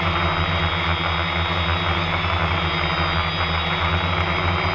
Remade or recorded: recorded